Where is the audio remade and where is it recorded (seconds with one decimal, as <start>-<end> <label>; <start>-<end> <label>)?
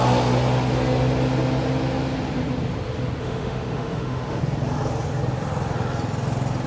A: 0.0-3.2 recorded; 3.2-4.4 remade; 4.4-6.7 recorded